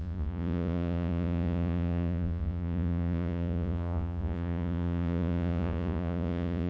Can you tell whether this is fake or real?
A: fake